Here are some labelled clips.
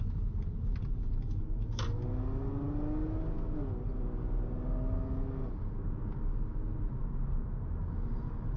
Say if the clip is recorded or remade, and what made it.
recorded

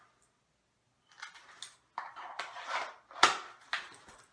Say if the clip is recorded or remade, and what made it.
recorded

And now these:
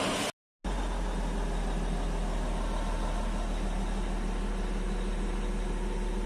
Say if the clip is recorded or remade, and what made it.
recorded